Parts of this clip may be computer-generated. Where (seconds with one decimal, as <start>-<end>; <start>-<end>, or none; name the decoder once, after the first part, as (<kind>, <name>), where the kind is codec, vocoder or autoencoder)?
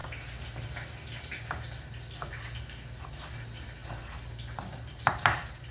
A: 3.0-3.8 (vocoder, BigVGAN v2); 4.7-5.7